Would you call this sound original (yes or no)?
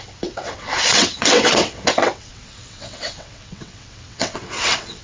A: no